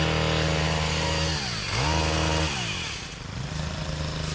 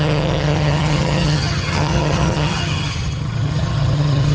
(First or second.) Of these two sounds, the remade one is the second